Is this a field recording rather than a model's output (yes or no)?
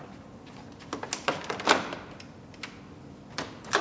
yes